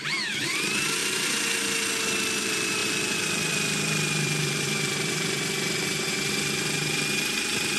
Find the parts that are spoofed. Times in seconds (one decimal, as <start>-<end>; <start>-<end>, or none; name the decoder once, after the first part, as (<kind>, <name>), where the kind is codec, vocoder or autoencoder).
0.0-1.0 (vocoder, BigVGAN v2); 2.4-7.8